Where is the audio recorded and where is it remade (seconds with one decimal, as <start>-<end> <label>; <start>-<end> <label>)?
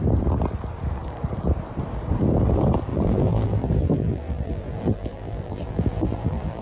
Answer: 0.0-2.9 recorded; 2.9-6.6 remade